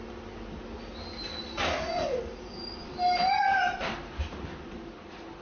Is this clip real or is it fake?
real